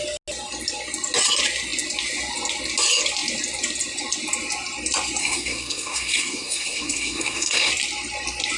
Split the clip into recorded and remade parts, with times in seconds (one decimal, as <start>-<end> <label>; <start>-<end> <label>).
0.0-5.2 recorded; 5.2-7.7 remade; 7.7-8.6 recorded